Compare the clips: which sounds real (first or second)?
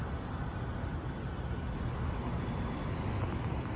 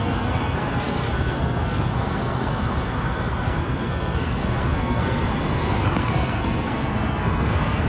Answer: first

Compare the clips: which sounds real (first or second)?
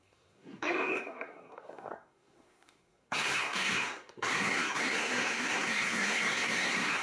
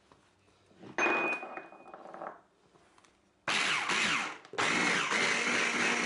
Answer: second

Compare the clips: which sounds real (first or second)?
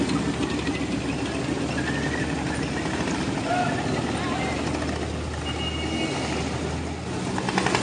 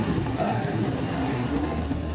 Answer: first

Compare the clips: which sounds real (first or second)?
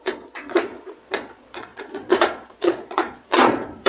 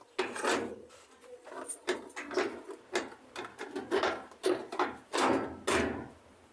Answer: second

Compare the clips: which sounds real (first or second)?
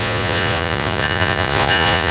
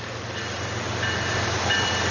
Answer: second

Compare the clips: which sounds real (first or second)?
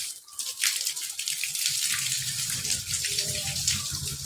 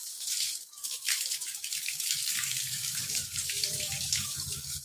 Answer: first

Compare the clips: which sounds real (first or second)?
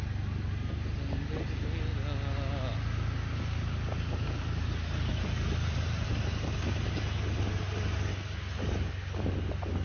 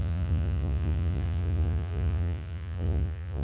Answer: first